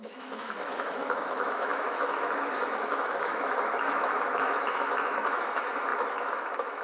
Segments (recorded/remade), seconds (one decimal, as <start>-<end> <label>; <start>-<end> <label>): 0.0-6.8 remade